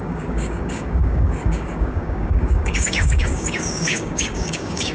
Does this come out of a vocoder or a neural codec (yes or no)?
yes